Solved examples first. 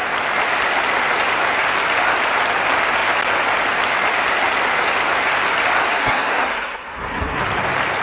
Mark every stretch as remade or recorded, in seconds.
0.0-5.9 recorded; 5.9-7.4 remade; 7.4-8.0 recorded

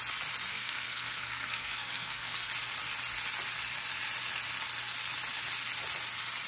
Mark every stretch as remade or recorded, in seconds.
0.0-0.5 recorded; 0.5-2.5 remade; 2.5-6.5 recorded

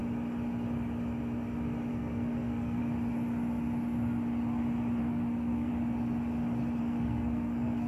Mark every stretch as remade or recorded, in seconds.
0.0-1.9 recorded; 1.9-2.8 remade; 2.8-5.0 recorded; 5.0-5.7 remade; 5.7-6.8 recorded; 6.8-7.9 remade

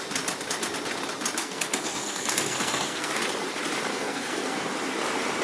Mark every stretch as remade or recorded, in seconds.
0.0-1.4 recorded; 1.4-3.2 remade; 3.2-3.9 recorded; 3.9-4.7 remade; 4.7-5.4 recorded

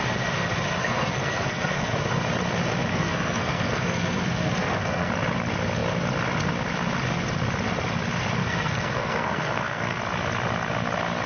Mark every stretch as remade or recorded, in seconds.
0.0-0.8 recorded; 0.8-1.9 remade; 1.9-2.9 recorded; 2.9-5.1 remade; 5.1-8.4 recorded; 8.4-10.0 remade; 10.0-11.3 recorded

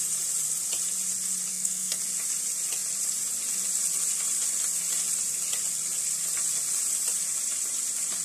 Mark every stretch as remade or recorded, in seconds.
0.0-1.5 recorded; 1.5-2.0 remade; 2.0-8.2 recorded

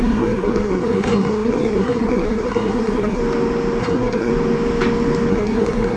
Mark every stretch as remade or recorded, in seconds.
0.0-3.2 remade; 3.2-3.8 recorded; 3.8-4.3 remade; 4.3-5.3 recorded; 5.3-6.0 remade